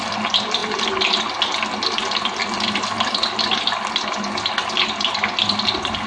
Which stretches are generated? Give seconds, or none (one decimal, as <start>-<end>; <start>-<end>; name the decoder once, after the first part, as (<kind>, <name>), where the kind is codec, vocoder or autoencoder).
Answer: none